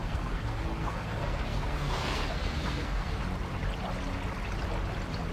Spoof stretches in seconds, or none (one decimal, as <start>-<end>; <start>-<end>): 0.0-3.2